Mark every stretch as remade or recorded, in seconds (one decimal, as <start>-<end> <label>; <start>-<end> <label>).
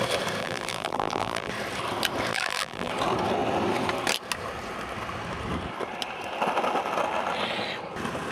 0.0-0.4 recorded; 0.4-1.5 remade; 1.5-2.3 recorded; 2.3-2.9 remade; 2.9-8.3 recorded